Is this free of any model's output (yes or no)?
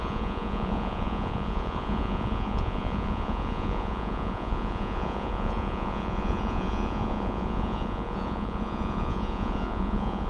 no